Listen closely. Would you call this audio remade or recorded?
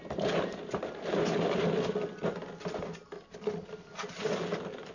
recorded